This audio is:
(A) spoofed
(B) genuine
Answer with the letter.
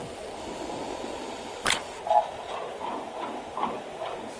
B